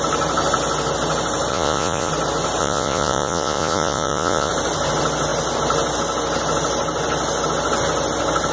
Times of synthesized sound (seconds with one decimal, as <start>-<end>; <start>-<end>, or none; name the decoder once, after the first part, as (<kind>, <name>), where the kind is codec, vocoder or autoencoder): 1.5-2.1 (vocoder, Vocos); 2.6-4.5